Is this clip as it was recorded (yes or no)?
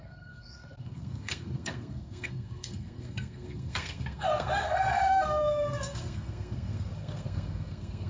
no